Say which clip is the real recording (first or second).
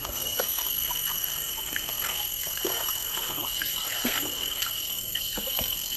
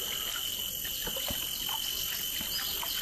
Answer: second